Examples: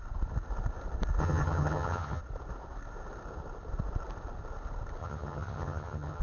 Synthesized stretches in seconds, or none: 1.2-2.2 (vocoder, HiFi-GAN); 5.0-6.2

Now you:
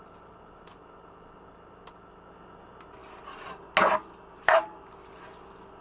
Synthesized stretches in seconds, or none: none

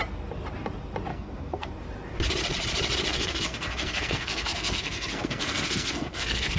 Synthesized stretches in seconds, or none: 1.1-1.7 (codec, SNAC); 3.1-6.6

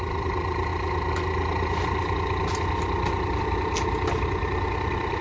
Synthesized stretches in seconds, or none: none

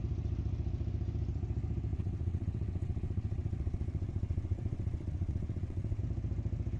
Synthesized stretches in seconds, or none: 1.9-6.0 (vocoder, WaveNeXt)